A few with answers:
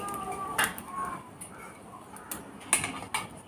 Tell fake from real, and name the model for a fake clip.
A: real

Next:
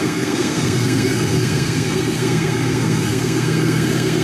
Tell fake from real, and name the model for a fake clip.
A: fake, codec, SNAC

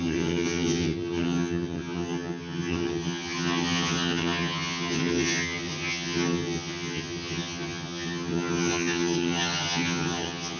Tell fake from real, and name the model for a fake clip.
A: fake, vocoder, HiFi-GAN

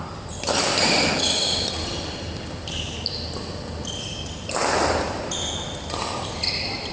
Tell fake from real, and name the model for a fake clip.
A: real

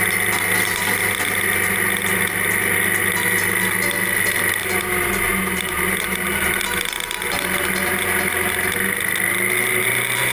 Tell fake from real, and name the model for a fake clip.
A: real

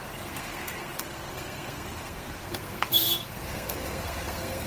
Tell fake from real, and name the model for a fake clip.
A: fake, codec, SNAC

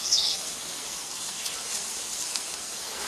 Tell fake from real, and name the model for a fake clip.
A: fake, codec, SNAC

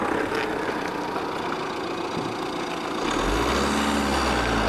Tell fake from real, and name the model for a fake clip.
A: real